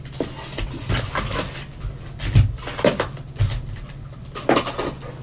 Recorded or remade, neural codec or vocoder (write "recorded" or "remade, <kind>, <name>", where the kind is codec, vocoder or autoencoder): recorded